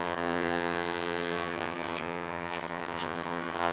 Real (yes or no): no